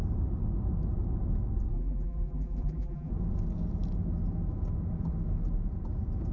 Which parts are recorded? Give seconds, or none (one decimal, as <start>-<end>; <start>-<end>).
0.0-1.7; 3.1-6.3